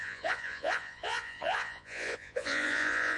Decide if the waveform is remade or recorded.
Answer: remade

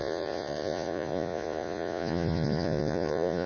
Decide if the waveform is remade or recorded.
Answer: remade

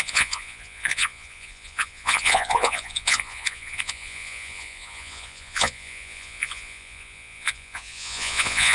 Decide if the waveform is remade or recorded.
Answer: remade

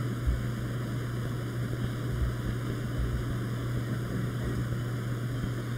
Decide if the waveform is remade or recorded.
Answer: recorded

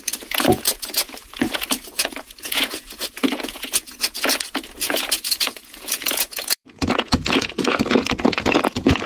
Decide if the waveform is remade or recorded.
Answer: remade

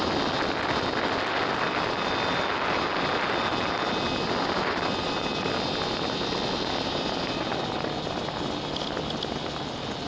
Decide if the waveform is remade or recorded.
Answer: recorded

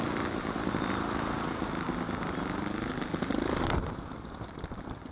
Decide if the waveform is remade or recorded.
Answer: recorded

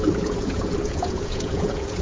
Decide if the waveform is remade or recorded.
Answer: remade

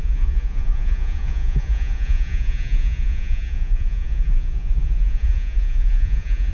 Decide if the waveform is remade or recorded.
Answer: remade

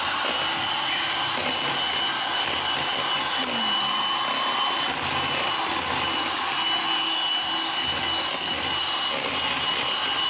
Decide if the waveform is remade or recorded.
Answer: recorded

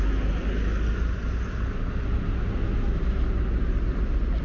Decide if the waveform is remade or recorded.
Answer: recorded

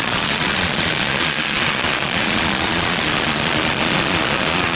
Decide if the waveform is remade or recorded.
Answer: remade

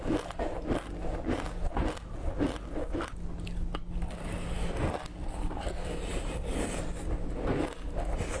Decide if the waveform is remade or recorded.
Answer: recorded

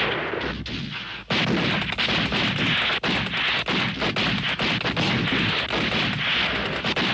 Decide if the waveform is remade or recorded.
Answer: recorded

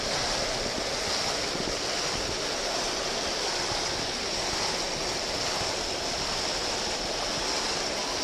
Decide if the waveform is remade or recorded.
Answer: recorded